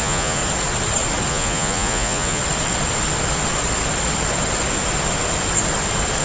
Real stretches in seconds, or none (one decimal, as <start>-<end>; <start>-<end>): 0.4-1.3; 2.4-6.2